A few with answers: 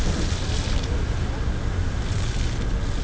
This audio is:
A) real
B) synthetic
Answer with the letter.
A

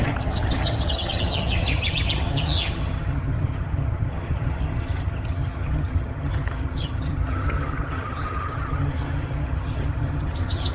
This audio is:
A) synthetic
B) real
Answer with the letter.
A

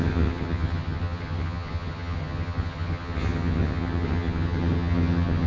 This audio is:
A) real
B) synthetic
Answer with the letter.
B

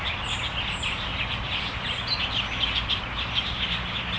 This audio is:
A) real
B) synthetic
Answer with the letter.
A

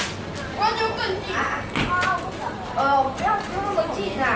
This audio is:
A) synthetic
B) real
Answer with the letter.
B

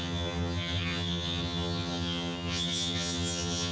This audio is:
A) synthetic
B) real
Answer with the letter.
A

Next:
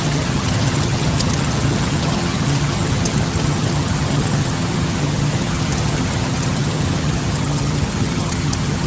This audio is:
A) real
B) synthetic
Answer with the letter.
B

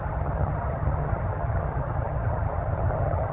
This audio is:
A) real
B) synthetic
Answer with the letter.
B